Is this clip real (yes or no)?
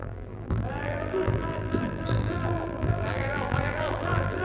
no